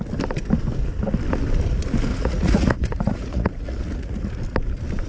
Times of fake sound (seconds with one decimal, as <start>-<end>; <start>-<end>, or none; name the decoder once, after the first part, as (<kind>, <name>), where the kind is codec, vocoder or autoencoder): 2.1-4.4 (vocoder, Vocos)